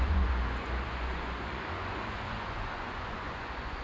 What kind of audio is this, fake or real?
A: fake